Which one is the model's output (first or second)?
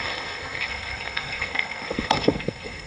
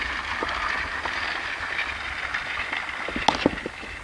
first